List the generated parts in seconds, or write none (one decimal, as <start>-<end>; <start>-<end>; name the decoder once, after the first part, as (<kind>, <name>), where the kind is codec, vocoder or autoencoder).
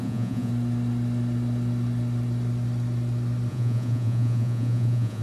0.0-0.5 (vocoder, Vocos); 3.5-5.2